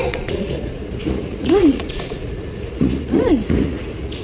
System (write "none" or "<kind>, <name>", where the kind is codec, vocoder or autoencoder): vocoder, Vocos